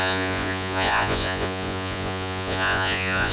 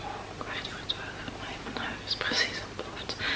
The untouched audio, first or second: second